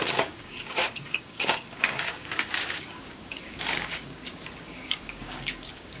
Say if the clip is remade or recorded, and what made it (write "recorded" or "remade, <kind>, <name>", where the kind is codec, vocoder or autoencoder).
remade, codec, DAC